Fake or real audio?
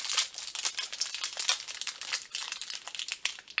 real